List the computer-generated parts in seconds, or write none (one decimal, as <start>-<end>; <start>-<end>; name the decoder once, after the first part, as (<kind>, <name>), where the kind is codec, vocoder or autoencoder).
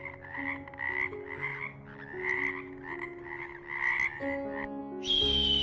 none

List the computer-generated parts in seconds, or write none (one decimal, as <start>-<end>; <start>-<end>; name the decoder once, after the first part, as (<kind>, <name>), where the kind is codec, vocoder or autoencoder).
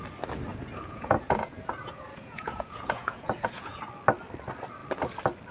0.5-3.8 (vocoder, Vocos)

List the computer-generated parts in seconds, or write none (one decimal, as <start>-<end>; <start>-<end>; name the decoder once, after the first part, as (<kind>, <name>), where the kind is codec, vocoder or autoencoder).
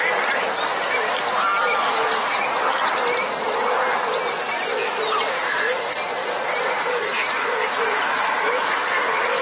0.0-1.5 (vocoder, BigVGAN v2); 6.8-9.4